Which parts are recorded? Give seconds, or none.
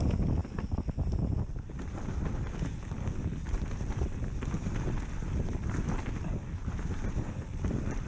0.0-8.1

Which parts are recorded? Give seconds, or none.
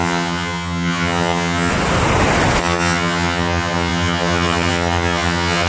1.7-2.6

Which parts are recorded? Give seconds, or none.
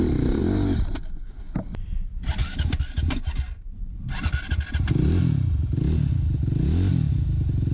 0.0-7.7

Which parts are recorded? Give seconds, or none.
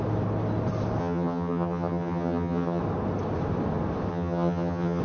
0.0-1.0; 2.8-4.1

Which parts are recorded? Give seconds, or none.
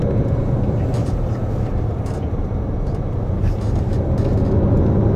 0.0-1.0; 4.1-5.2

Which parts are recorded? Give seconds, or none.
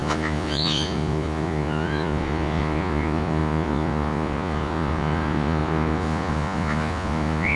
none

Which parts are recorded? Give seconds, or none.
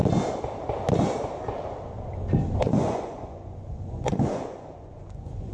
0.0-2.6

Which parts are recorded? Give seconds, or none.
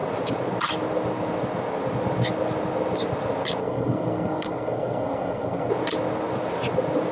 0.0-3.6; 5.7-7.1